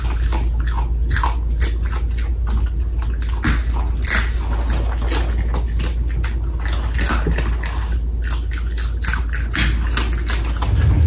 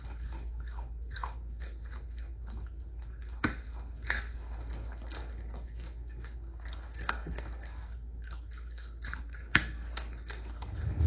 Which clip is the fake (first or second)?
second